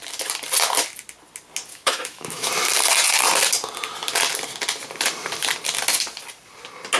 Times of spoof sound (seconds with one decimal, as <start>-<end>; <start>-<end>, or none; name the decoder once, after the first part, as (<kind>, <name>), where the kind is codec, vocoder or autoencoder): 1.7-2.5 (autoencoder, DAC-VAE)

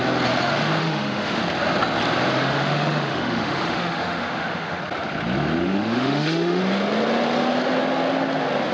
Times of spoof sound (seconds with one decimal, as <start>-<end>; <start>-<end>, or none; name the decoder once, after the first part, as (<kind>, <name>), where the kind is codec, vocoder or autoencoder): 0.8-1.4 (autoencoder, DAC-VAE); 2.3-4.8; 5.6-6.6

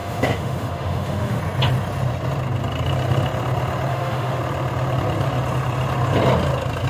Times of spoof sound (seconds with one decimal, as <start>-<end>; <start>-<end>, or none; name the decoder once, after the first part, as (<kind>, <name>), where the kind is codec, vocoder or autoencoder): 0.0-1.4 (autoencoder, DAC-VAE); 3.9-4.4

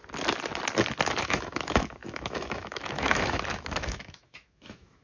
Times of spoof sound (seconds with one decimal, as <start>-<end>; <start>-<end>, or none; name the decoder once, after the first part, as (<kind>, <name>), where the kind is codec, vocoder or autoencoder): 1.2-5.0 (autoencoder, DAC-VAE)

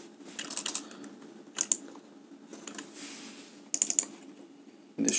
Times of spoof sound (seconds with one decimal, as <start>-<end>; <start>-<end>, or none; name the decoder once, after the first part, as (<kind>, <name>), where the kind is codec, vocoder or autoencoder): none

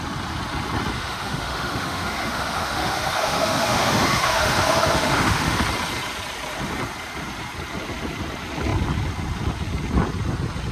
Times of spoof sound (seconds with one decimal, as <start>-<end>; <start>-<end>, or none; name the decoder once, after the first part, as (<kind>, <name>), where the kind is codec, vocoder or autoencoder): 0.9-5.6 (autoencoder, DAC-VAE)

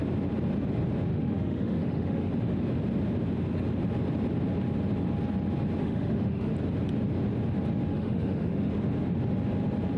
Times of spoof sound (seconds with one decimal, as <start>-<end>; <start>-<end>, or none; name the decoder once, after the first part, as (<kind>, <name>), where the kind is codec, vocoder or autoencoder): 1.1-2.3 (autoencoder, DAC-VAE); 5.8-6.5; 7.9-8.7